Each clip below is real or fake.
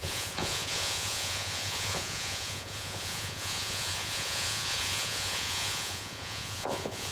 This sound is fake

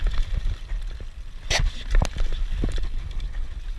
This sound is real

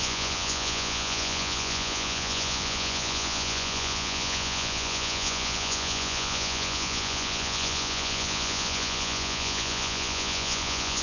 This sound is fake